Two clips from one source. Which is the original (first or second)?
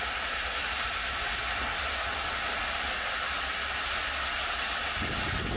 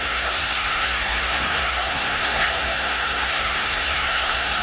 first